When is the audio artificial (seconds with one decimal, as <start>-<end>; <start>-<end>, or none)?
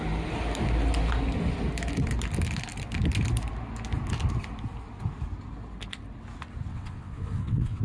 6.7-7.8